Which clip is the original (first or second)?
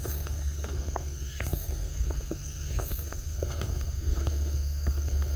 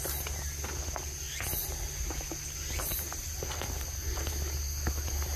second